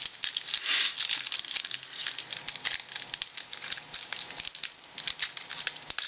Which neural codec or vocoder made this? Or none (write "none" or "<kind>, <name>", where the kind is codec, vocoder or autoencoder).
none